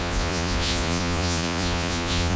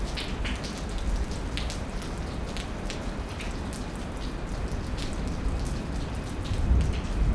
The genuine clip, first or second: second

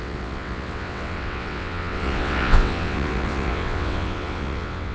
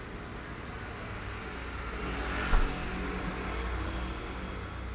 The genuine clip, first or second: second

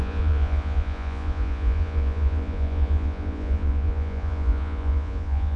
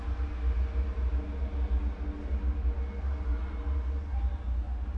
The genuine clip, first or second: second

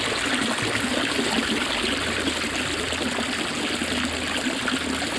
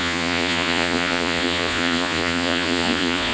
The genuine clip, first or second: first